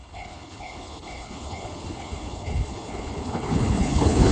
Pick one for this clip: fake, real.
fake